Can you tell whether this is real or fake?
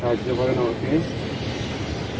real